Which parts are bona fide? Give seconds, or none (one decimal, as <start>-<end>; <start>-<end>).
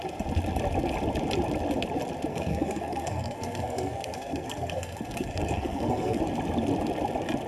0.0-2.3; 6.2-7.5